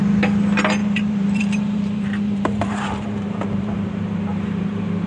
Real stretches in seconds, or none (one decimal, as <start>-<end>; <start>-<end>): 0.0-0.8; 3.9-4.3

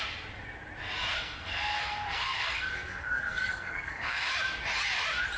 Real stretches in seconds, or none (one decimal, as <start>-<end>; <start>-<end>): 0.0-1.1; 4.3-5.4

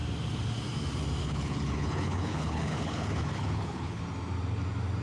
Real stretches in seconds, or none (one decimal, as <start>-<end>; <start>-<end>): 0.0-1.2; 4.0-5.0